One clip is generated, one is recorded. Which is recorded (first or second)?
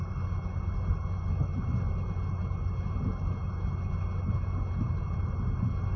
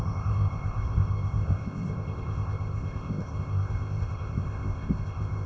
first